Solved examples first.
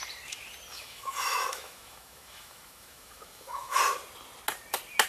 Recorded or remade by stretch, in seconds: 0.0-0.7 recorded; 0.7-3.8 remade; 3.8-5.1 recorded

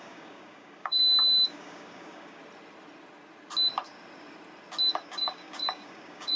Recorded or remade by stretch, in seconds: 0.0-1.0 remade; 1.0-1.5 recorded; 1.5-2.4 remade; 2.4-5.0 recorded; 5.0-6.4 remade

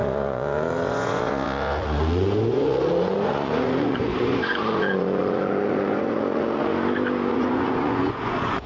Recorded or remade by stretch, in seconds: 0.0-6.7 remade; 6.7-7.3 recorded; 7.3-8.7 remade

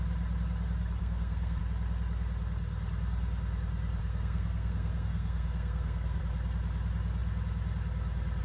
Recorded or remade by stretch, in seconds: 0.0-1.0 recorded; 1.0-1.6 remade; 1.6-4.0 recorded; 4.0-6.2 remade; 6.2-8.4 recorded

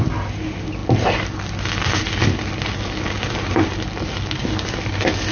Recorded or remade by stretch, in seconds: 0.0-5.3 recorded